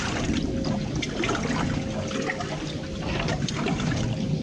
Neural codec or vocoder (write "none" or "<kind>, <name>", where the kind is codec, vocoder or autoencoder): none